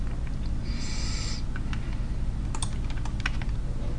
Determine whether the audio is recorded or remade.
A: recorded